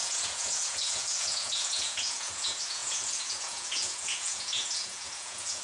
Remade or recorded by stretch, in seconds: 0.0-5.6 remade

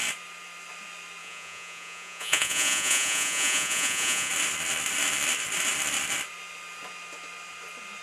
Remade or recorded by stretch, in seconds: 0.0-1.2 recorded; 1.2-4.3 remade; 4.3-8.0 recorded

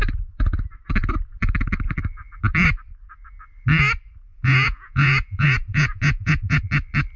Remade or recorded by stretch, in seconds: 0.0-4.3 recorded; 4.3-6.6 remade; 6.6-7.2 recorded

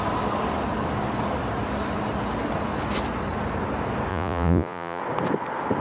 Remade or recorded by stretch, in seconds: 0.0-4.1 recorded; 4.1-5.0 remade; 5.0-5.8 recorded

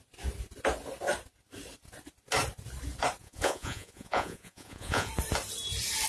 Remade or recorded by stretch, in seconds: 0.0-3.2 recorded; 3.2-5.1 remade; 5.1-6.1 recorded

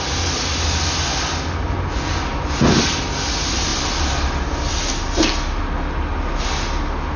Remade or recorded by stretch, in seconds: 0.0-7.2 recorded

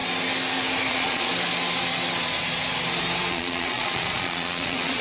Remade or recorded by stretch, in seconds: 0.0-0.9 recorded; 0.9-1.3 remade; 1.3-3.3 recorded; 3.3-5.0 remade

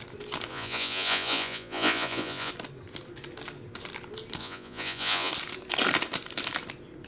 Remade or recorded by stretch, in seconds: 0.0-0.5 recorded; 0.5-2.5 remade; 2.5-4.4 recorded; 4.4-5.3 remade; 5.3-7.1 recorded